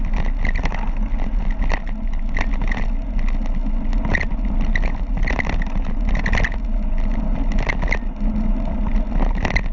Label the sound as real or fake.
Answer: real